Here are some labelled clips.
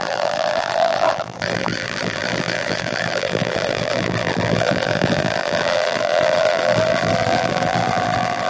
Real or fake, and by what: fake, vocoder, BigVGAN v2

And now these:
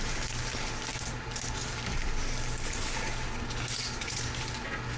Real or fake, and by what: real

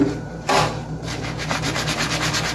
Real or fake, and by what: fake, vocoder, BigVGAN v2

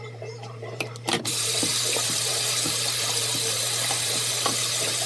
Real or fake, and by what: fake, vocoder, BigVGAN v2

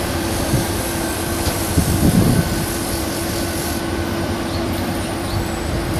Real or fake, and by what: fake, vocoder, BigVGAN v2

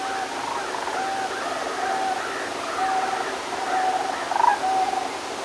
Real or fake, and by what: real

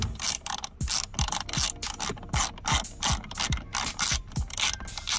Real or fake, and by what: real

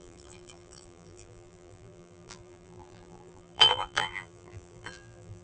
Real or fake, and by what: fake, vocoder, BigVGAN v2